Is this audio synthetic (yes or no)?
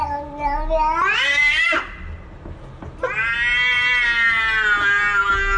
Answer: no